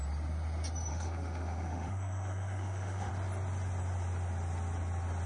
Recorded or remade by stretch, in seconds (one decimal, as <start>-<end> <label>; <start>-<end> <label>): 0.0-0.9 recorded; 0.9-3.1 remade; 3.1-5.3 recorded